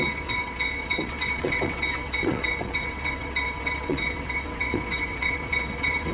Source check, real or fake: fake